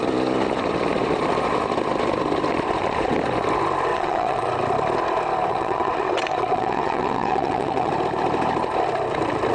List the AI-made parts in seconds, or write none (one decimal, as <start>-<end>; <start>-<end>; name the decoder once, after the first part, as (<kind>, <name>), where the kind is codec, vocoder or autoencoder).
3.9-4.5 (vocoder, WaveNeXt); 5.5-7.9